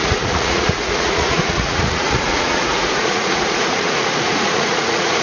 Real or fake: fake